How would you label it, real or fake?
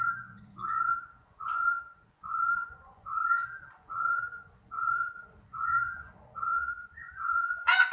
fake